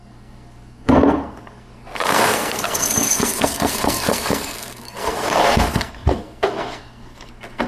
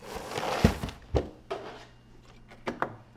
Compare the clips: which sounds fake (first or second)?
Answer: first